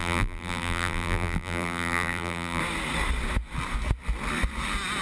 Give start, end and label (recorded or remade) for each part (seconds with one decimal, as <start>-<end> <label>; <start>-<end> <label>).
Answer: 0.0-2.6 remade; 2.6-5.0 recorded